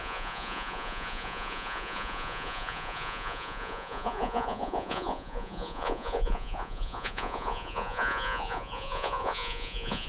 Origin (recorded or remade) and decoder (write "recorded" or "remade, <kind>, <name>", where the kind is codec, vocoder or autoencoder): remade, vocoder, Vocos